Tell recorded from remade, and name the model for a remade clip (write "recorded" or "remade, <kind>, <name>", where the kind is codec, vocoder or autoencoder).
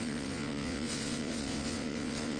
remade, vocoder, WaveNeXt